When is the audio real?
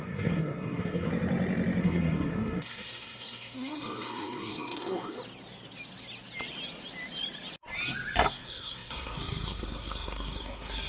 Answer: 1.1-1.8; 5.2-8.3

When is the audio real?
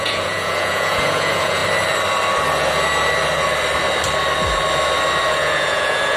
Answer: 1.6-5.3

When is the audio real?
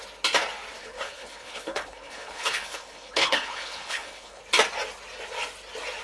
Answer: 0.0-0.8; 4.4-6.0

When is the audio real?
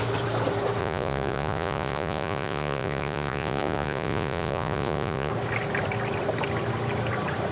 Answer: 0.0-0.8; 5.3-7.5